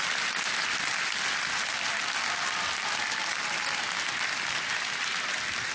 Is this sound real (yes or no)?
yes